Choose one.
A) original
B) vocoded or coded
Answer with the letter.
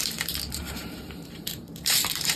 B